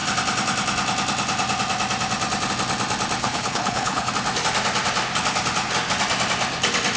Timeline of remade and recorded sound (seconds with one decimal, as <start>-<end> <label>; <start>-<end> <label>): 0.0-3.2 recorded; 3.2-4.1 remade; 4.1-7.0 recorded